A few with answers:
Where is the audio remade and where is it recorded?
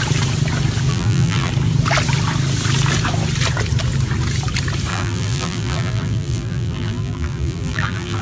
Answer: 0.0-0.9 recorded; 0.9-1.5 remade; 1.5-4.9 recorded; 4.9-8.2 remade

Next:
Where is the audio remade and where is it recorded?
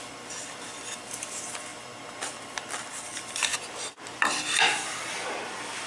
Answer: 0.0-1.7 recorded; 1.7-2.9 remade; 2.9-3.5 recorded; 3.5-4.3 remade; 4.3-5.9 recorded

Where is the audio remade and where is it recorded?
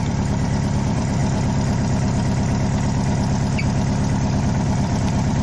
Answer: 0.0-1.2 remade; 1.2-4.4 recorded; 4.4-5.4 remade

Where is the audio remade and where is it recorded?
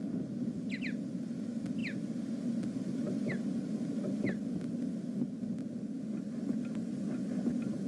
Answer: 0.0-7.9 recorded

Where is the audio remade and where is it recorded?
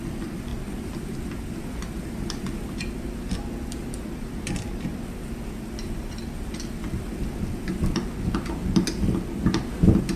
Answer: 0.0-8.6 remade; 8.6-9.4 recorded; 9.4-10.2 remade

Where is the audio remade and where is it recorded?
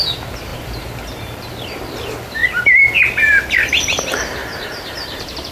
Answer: 0.0-0.5 recorded; 0.5-1.5 remade; 1.5-4.4 recorded; 4.4-5.5 remade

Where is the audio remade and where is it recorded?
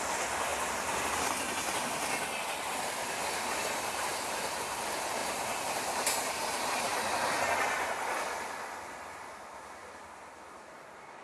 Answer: 0.0-5.2 recorded; 5.2-6.3 remade; 6.3-11.2 recorded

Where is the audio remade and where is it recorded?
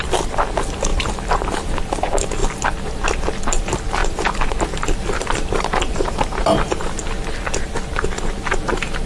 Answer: 0.0-0.9 recorded; 0.9-1.8 remade; 1.8-4.0 recorded; 4.0-6.3 remade; 6.3-9.1 recorded